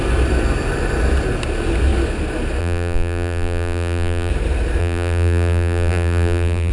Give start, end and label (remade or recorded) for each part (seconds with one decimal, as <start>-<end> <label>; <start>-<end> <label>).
0.0-2.6 recorded; 2.6-4.3 remade; 4.3-4.8 recorded; 4.8-6.7 remade